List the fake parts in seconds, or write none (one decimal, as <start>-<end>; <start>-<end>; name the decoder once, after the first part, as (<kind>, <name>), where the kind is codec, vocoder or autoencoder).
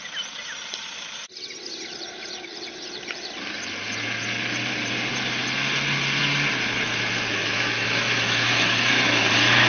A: 7.3-9.7 (autoencoder, DAC-VAE)